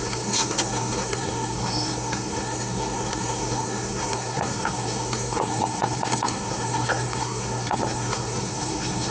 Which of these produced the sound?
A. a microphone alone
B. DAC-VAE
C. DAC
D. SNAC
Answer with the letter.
D